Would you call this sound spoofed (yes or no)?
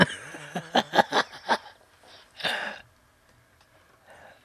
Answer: no